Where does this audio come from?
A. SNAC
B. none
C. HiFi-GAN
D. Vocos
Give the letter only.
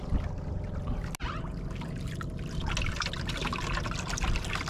B